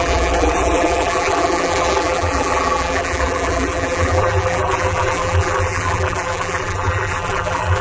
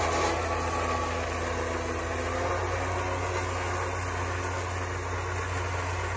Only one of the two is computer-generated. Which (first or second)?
first